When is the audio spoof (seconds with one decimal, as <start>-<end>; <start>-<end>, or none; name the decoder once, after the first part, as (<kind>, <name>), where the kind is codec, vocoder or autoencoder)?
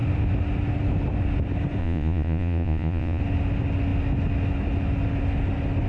1.8-3.2 (vocoder, Vocos)